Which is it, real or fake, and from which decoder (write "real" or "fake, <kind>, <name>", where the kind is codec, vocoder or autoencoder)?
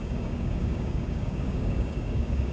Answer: fake, codec, DAC